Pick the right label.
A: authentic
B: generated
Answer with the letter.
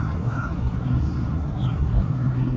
B